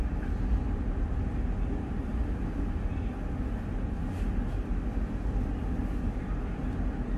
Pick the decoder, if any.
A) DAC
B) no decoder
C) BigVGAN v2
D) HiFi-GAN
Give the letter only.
B